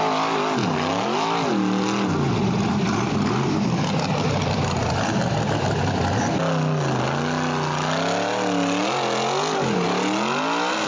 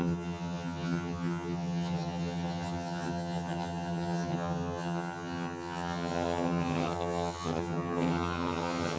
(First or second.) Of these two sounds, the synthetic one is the second